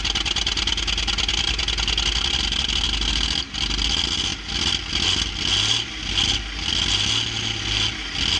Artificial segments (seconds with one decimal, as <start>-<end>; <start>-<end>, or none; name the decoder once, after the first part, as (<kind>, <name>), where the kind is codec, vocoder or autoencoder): none